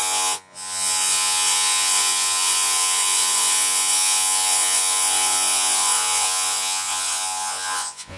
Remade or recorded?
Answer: remade